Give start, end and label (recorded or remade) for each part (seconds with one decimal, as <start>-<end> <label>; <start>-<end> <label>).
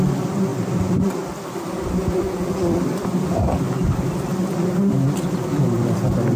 0.0-0.5 remade; 0.5-1.6 recorded; 1.6-2.0 remade; 2.0-3.8 recorded; 3.8-4.3 remade; 4.3-4.9 recorded; 4.9-6.4 remade